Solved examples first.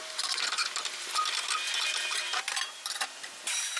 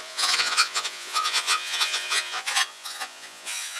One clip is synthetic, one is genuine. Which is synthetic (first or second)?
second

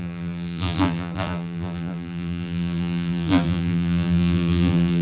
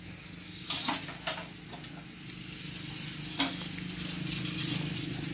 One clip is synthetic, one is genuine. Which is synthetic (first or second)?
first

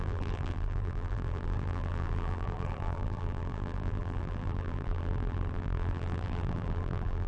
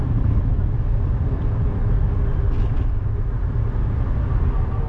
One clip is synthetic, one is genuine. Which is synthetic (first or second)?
first